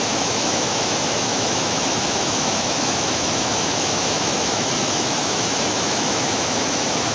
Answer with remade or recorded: remade